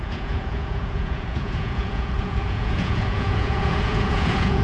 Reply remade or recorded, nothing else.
remade